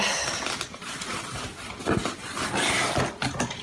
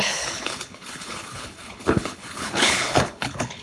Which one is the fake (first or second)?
second